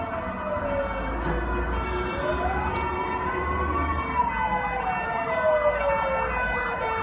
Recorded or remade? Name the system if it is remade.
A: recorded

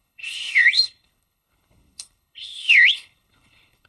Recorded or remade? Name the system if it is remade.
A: remade, codec, HILCodec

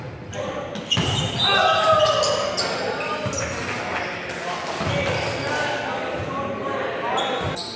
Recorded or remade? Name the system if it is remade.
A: recorded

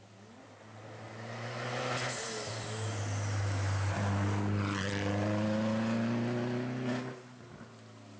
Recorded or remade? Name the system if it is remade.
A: recorded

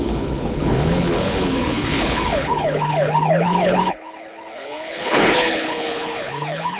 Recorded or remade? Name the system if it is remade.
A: remade, codec, HILCodec